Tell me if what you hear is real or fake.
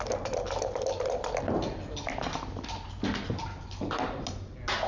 real